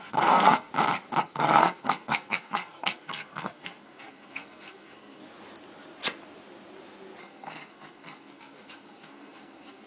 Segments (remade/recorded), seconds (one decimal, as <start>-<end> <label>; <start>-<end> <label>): 0.0-0.7 remade; 0.7-1.2 recorded; 1.2-5.2 remade; 5.2-7.2 recorded; 7.2-9.9 remade